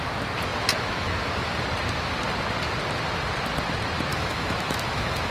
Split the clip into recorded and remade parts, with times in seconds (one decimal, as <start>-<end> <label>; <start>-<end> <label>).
0.0-4.1 recorded; 4.1-5.3 remade